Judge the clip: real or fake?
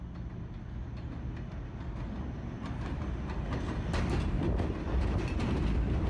real